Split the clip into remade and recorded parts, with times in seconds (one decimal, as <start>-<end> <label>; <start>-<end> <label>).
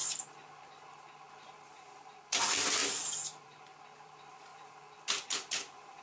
0.0-1.3 recorded; 1.3-6.0 remade